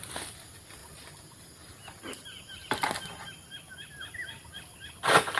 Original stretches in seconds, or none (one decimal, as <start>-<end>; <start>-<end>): 0.0-0.8; 1.9-2.6; 3.3-5.4